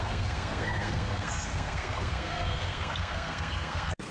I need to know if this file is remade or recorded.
remade